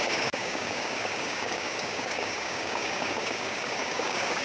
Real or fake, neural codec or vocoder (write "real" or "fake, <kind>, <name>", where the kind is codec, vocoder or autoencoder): fake, codec, DAC